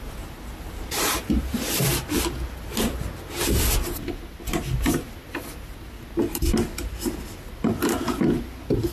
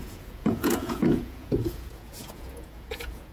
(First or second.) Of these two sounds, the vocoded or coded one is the second